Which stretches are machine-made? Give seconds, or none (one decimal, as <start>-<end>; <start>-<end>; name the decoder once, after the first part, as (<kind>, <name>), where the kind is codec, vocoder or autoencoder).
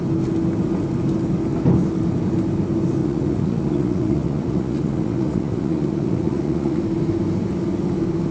3.0-6.8 (vocoder, Vocos)